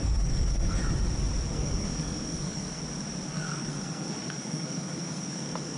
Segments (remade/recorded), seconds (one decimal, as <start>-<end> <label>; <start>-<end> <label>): 0.0-0.8 remade; 0.8-1.5 recorded; 1.5-2.8 remade; 2.8-3.3 recorded; 3.3-5.8 remade